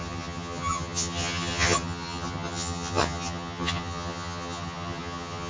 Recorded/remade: remade